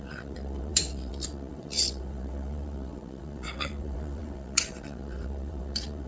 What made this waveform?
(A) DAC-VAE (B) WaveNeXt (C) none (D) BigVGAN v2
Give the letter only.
B